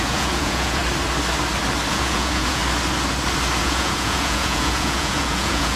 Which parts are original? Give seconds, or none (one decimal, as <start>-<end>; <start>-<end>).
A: 0.8-1.9; 2.6-3.6